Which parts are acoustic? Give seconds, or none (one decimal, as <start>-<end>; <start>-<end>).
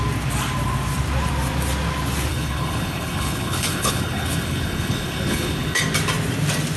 0.0-2.3; 5.8-6.8